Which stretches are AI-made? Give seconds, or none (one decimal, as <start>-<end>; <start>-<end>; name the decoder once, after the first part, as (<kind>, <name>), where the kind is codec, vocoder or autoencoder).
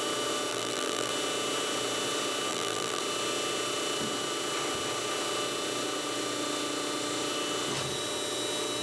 0.5-1.1 (vocoder, BigVGAN v2); 2.5-3.0